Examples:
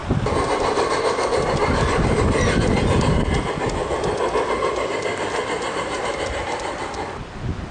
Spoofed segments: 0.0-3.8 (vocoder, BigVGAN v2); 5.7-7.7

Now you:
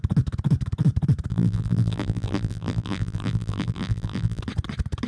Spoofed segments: 1.3-4.4 (vocoder, BigVGAN v2)